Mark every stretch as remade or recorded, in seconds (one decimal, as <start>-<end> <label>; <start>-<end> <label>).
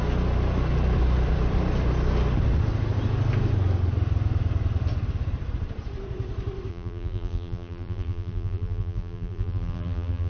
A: 0.0-6.7 recorded; 6.7-10.3 remade